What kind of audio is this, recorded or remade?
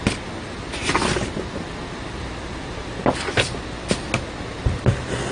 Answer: recorded